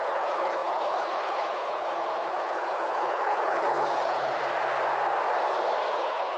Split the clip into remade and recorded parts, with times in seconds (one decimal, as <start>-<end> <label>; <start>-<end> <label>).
0.0-4.4 remade; 4.4-5.9 recorded; 5.9-6.4 remade